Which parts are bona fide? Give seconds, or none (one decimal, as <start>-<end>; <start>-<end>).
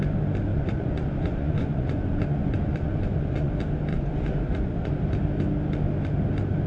0.0-0.5; 3.5-3.9; 4.9-6.7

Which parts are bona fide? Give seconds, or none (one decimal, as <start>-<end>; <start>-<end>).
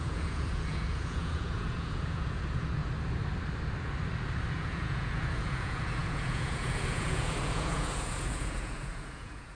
2.8-4.5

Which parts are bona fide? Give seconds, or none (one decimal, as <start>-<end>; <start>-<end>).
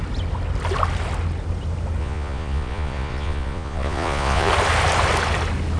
0.0-2.0; 4.5-5.8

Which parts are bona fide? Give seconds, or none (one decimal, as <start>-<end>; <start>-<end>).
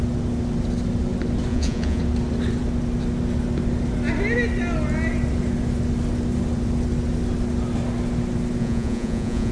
0.0-1.5; 2.0-8.6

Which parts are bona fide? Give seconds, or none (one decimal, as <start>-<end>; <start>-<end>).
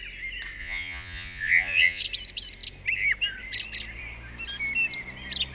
0.0-0.6; 2.0-5.5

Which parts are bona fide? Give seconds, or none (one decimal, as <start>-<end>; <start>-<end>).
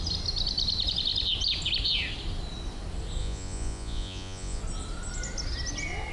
0.0-3.2; 4.6-6.1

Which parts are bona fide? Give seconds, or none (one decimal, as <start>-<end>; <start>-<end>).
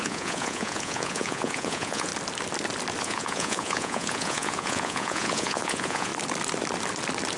2.1-3.0; 6.1-7.4